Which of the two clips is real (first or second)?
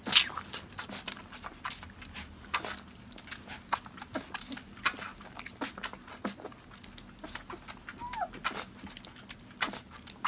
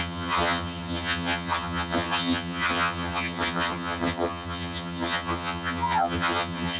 first